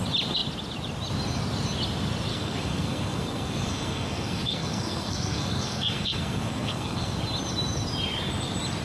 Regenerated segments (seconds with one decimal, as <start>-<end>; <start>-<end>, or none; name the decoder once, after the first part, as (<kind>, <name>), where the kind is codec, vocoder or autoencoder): 2.3-7.1 (codec, SNAC)